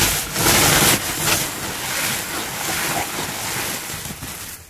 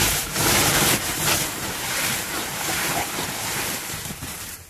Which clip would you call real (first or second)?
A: first